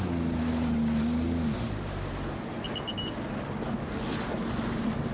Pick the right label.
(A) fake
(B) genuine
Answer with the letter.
B